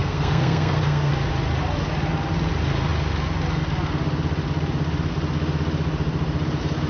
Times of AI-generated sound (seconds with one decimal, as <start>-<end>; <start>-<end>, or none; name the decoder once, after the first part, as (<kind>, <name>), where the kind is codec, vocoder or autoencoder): 0.0-1.1 (codec, SNAC)